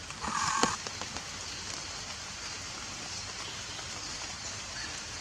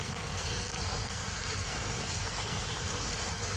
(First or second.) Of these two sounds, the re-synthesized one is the second